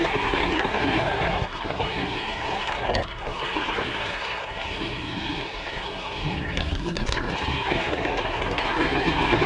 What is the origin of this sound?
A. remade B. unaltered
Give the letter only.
A